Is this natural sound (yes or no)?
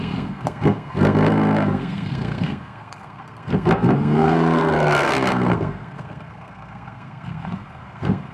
no